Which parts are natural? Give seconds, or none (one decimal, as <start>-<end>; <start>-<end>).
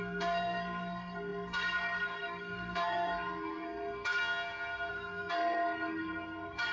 4.2-4.9